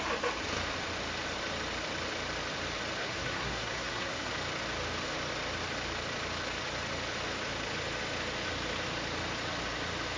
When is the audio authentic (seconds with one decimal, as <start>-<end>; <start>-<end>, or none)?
0.0-3.0; 4.3-10.2